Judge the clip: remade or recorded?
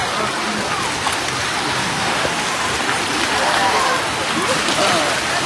recorded